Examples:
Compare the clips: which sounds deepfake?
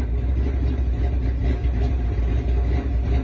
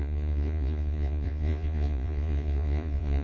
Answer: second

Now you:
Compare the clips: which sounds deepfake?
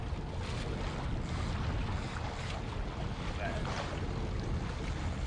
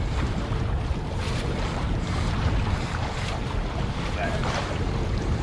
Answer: second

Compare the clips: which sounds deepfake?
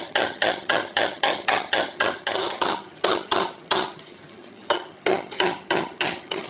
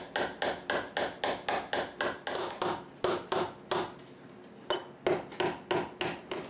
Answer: first